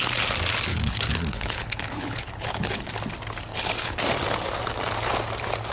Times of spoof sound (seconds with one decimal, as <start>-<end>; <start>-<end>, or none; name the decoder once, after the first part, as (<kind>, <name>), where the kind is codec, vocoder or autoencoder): 0.7-2.9 (codec, HILCodec); 3.5-4.0